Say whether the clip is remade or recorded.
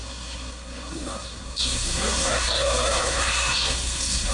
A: remade